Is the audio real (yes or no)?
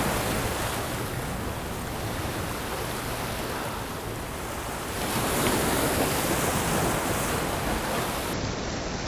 yes